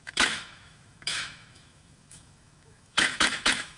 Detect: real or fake fake